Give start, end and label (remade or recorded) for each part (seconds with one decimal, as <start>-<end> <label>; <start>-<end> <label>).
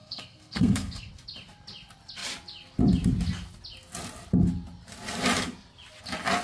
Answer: 0.0-1.1 remade; 1.1-6.4 recorded